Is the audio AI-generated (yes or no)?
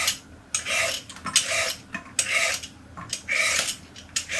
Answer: no